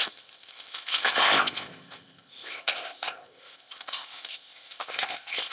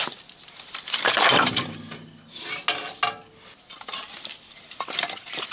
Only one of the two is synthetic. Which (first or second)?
first